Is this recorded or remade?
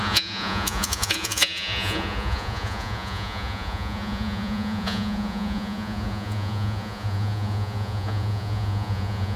remade